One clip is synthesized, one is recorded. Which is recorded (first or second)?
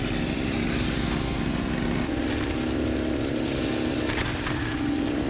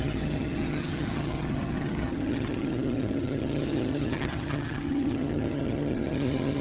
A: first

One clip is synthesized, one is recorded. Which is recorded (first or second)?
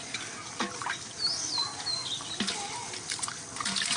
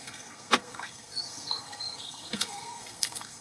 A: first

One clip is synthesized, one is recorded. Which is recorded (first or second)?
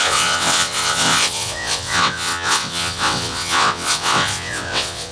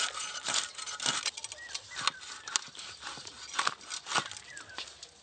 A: second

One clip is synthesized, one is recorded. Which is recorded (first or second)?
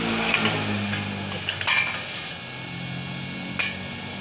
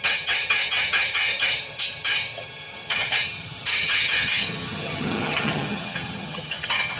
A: first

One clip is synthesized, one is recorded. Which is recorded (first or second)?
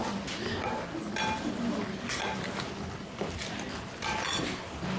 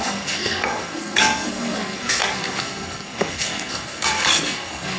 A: first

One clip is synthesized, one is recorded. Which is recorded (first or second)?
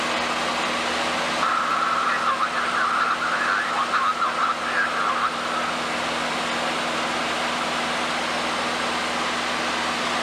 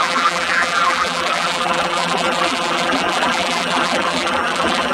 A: first